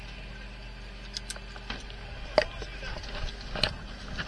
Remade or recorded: recorded